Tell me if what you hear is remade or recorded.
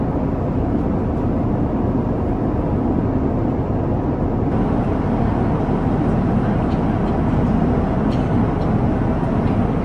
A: recorded